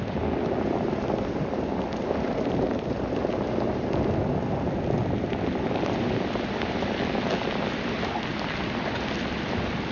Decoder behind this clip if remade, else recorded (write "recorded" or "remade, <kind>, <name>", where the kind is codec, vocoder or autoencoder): recorded